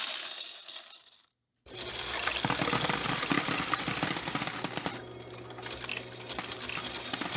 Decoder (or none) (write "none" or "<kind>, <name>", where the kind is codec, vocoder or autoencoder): none